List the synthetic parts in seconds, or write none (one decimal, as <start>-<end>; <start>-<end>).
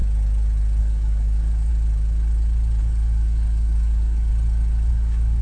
0.8-1.7; 2.8-4.3; 4.9-5.4